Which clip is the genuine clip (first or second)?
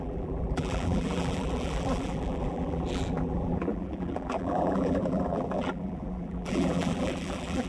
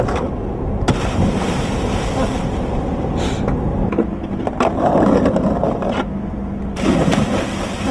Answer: second